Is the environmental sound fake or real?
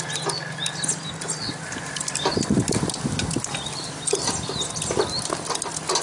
real